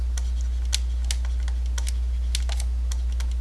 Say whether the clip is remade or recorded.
recorded